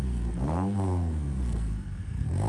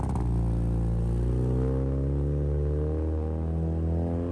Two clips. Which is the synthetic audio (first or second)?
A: first